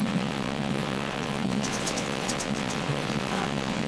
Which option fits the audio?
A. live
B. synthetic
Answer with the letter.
B